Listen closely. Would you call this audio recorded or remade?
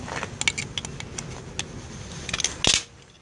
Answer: recorded